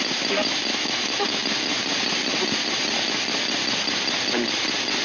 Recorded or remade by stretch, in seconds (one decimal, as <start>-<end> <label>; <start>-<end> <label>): 0.0-0.7 recorded; 0.7-1.4 remade; 1.4-5.0 recorded